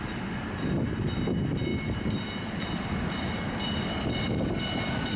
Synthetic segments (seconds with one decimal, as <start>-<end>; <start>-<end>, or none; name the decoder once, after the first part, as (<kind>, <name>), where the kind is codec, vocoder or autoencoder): none

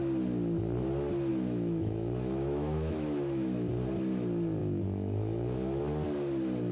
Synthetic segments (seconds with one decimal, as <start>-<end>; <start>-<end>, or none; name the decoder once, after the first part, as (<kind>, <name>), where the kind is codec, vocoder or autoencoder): 1.3-3.7 (autoencoder, DAC-VAE); 4.6-5.8

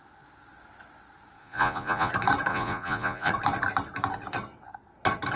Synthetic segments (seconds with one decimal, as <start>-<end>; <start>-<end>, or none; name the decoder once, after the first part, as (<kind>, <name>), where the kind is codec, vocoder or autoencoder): 1.4-2.1 (vocoder, Vocos); 2.5-3.3

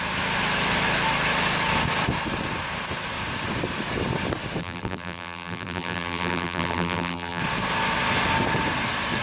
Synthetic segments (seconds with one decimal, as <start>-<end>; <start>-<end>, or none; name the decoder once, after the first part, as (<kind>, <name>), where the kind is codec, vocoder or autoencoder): 4.6-7.4 (vocoder, BigVGAN v2)

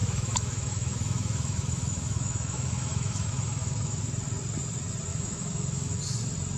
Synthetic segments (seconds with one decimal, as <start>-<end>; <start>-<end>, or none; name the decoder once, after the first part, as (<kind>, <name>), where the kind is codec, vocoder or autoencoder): 0.0-4.0 (autoencoder, DAC-VAE); 5.1-6.0

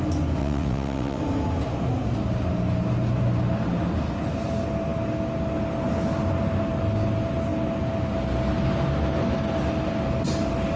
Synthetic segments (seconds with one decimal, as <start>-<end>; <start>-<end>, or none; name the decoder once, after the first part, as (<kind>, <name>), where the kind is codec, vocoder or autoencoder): 0.4-1.2 (vocoder, WaveNeXt)

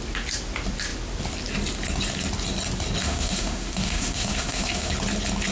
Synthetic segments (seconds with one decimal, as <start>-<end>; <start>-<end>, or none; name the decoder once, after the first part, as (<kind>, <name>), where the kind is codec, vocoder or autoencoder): 3.0-4.9 (autoencoder, DAC-VAE)